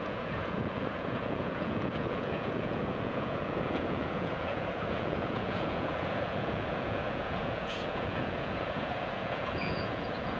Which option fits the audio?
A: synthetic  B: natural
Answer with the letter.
A